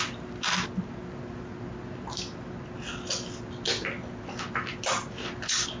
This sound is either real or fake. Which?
real